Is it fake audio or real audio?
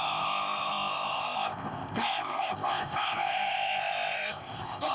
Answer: fake